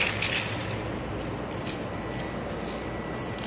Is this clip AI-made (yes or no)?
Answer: no